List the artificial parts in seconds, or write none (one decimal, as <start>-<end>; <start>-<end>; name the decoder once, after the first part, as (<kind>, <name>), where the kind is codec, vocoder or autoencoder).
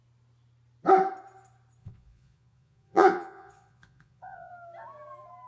1.8-4.5 (vocoder, Vocos)